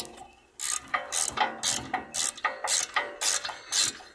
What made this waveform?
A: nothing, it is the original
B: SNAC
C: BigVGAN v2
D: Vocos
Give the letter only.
A